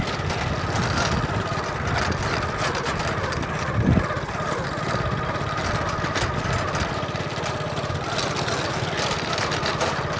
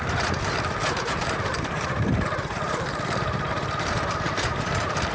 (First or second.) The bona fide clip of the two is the first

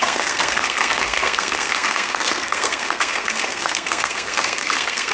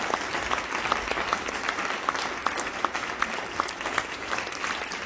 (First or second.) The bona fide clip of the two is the second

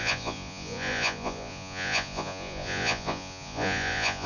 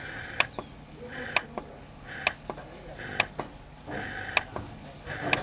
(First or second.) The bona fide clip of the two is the second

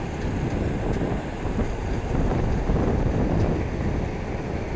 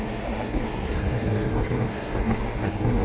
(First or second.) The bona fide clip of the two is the first